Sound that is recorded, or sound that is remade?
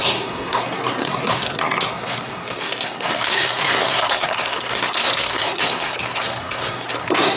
remade